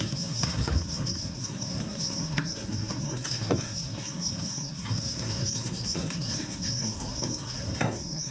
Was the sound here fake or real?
fake